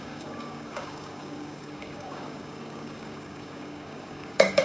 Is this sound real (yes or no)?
no